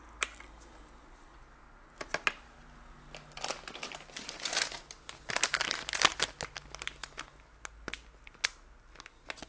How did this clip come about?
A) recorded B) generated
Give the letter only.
A